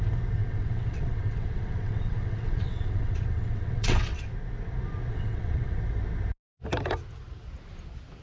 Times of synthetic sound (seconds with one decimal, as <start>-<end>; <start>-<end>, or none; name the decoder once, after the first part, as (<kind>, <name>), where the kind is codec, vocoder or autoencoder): 0.4-4.3 (vocoder, WaveNeXt); 5.1-5.8